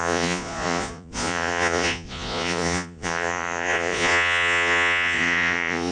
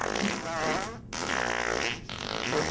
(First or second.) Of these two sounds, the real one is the second